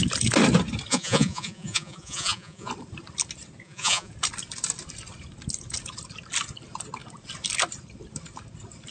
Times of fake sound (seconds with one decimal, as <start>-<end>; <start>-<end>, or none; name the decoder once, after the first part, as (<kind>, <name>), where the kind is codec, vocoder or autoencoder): 0.9-2.7 (vocoder, Vocos); 3.6-4.1